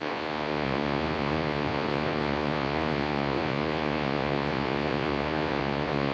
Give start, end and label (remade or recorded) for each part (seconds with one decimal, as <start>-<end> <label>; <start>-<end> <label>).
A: 0.0-6.1 remade